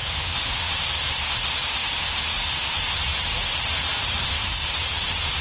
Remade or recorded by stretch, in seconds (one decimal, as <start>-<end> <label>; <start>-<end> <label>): 0.0-4.4 recorded; 4.4-5.4 remade

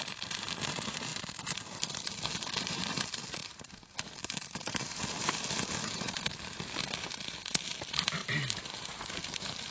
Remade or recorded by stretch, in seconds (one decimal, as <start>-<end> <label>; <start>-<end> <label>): 0.0-9.7 remade

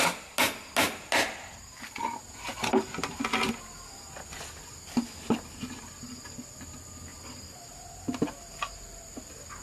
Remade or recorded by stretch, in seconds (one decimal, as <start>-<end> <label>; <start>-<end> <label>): 0.0-7.1 recorded; 7.1-7.7 remade; 7.7-9.6 recorded

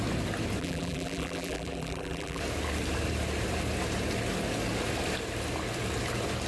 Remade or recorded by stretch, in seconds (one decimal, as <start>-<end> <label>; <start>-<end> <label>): 0.0-0.6 recorded; 0.6-2.4 remade; 2.4-6.5 recorded